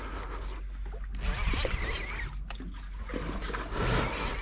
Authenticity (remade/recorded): recorded